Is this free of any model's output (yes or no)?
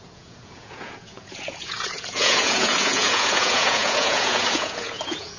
no